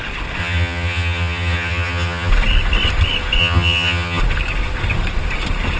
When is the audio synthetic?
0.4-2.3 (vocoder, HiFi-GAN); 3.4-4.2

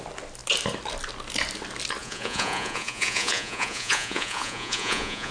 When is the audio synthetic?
2.0-5.3 (vocoder, Vocos)

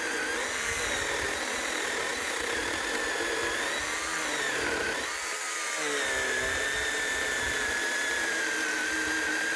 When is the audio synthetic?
none

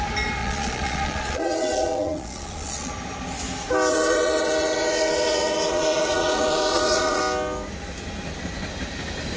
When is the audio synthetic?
0.4-2.9 (vocoder, Vocos); 3.9-7.2

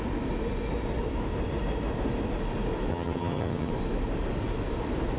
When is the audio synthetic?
2.9-3.7 (vocoder, HiFi-GAN)

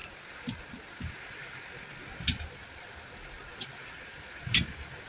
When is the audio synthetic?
none

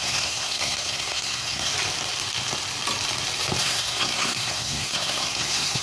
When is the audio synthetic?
0.0-1.7 (codec, SNAC); 3.6-5.8